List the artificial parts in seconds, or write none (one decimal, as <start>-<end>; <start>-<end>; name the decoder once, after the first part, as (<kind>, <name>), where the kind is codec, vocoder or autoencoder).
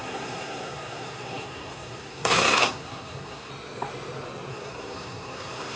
0.0-3.5 (codec, SNAC); 4.5-5.8